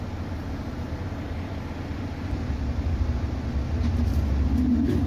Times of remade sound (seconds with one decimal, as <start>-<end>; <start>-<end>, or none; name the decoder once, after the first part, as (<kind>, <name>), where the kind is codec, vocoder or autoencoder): 0.4-2.5 (vocoder, BigVGAN v2)